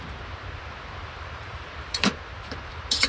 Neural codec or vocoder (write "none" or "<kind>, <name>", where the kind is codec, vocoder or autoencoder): vocoder, BigVGAN v2